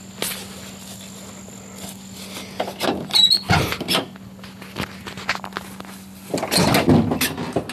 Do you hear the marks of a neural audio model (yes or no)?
no